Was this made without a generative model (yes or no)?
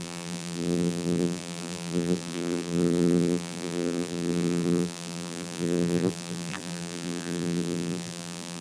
no